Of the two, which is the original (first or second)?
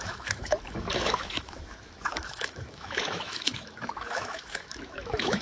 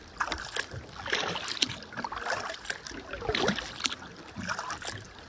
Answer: second